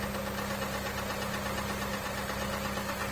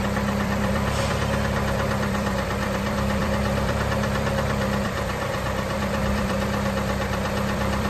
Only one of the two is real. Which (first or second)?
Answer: first